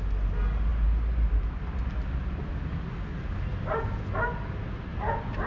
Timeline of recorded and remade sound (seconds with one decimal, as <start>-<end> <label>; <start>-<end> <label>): 0.0-5.5 recorded